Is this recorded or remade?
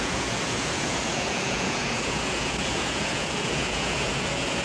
remade